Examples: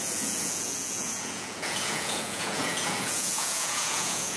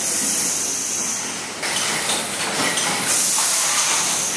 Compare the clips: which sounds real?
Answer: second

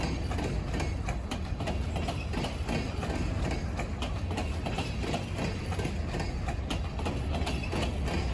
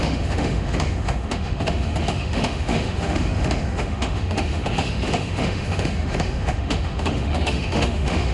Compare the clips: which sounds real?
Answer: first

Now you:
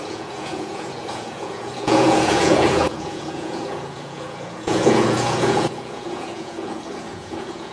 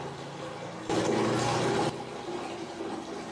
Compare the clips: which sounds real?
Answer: second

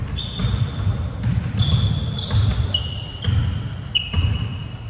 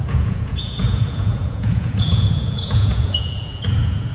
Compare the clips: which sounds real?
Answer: first